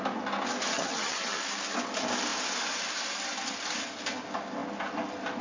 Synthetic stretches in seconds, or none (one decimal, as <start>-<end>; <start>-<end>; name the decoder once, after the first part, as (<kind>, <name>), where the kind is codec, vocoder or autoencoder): 0.7-1.4 (vocoder, HiFi-GAN)